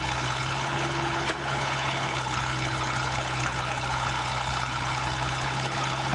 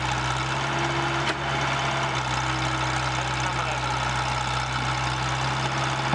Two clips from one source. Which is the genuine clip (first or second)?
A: second